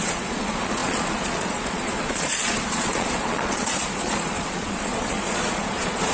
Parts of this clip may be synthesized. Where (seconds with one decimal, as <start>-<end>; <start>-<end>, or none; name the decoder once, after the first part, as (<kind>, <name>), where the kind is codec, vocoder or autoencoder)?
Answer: 0.0-6.1 (vocoder, Vocos)